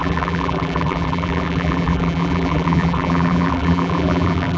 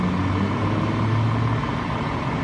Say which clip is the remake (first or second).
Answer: first